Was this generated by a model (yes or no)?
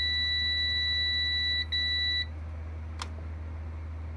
no